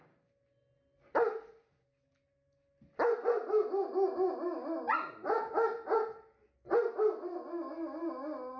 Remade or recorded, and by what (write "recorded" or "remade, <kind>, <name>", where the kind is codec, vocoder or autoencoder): recorded